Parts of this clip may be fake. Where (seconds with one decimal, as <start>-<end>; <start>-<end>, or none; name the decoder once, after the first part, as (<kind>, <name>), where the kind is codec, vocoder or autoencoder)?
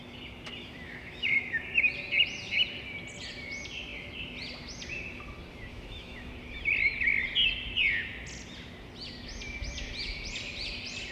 0.6-1.6 (autoencoder, DAC-VAE); 5.7-6.3